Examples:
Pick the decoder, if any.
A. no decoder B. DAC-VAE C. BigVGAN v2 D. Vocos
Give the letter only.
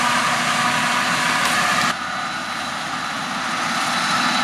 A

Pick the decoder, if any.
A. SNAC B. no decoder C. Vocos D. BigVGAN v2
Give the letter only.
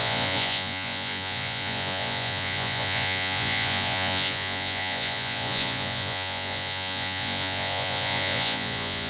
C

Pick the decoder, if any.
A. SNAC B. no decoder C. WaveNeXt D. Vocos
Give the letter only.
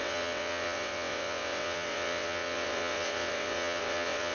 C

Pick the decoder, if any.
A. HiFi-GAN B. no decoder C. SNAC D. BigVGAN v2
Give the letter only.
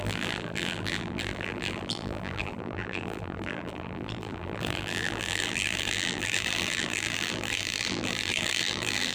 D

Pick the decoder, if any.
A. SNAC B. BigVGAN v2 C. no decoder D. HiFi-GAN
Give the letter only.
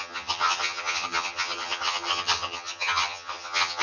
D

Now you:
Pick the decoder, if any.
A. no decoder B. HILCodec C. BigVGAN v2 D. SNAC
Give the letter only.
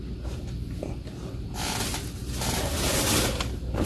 A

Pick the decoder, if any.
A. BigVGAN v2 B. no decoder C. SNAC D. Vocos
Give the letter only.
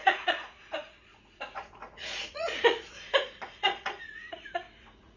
D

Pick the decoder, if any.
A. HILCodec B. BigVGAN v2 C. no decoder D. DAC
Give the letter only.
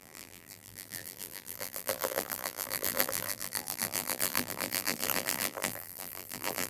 B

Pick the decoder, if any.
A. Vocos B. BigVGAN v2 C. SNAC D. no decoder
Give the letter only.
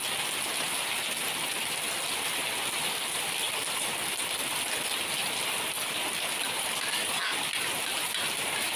D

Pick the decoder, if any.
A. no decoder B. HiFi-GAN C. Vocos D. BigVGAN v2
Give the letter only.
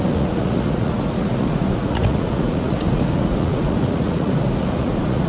C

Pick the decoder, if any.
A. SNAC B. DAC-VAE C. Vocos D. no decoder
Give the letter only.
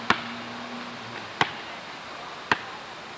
D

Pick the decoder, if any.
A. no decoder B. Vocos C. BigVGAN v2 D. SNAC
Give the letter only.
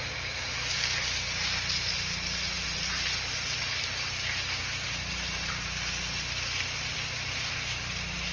A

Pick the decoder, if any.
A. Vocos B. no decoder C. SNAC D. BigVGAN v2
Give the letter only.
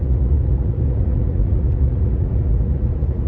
A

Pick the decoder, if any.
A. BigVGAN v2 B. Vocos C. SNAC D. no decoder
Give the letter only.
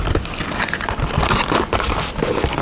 D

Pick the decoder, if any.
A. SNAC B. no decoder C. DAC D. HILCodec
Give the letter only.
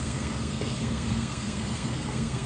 A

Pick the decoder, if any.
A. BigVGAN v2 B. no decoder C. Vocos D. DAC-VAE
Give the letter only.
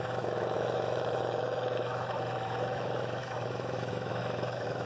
D